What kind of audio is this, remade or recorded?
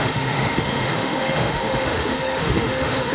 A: remade